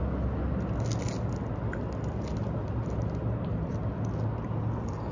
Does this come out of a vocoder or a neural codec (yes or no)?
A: no